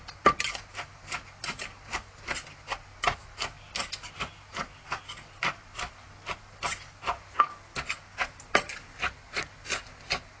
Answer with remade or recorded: recorded